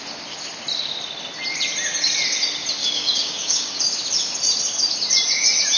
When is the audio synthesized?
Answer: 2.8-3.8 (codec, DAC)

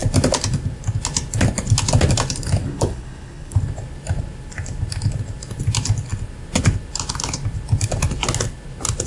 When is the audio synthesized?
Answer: 2.6-3.6 (codec, HILCodec)

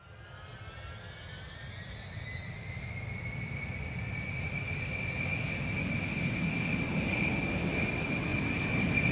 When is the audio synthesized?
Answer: none